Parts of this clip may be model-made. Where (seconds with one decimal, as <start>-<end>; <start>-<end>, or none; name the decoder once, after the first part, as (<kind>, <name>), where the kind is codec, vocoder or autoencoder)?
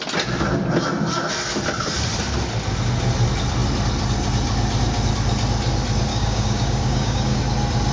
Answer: 6.1-7.4 (codec, DAC)